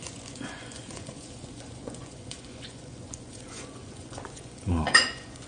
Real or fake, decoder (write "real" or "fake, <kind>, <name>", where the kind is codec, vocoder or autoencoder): fake, vocoder, Vocos